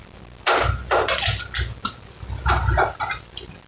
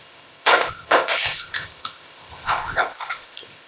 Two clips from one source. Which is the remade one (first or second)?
second